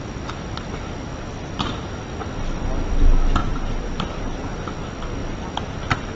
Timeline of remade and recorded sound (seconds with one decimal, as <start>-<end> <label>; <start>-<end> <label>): 0.0-1.1 recorded; 1.1-1.8 remade; 1.8-3.4 recorded; 3.4-4.6 remade; 4.6-6.1 recorded